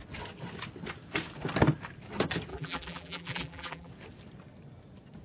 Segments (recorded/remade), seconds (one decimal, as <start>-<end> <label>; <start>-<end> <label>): 0.0-2.5 recorded; 2.5-3.9 remade; 3.9-5.2 recorded